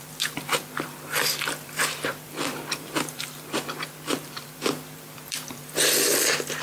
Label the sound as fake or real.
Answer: fake